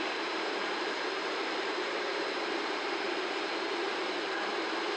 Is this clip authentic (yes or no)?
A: no